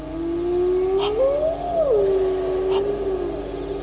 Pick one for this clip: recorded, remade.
recorded